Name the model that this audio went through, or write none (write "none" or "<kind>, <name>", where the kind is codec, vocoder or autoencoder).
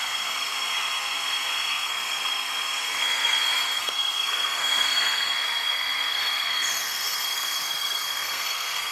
codec, SNAC